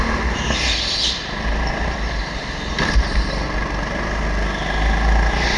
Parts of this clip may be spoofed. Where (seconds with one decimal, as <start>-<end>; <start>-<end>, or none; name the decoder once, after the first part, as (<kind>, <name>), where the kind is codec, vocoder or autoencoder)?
1.2-4.2 (vocoder, BigVGAN v2)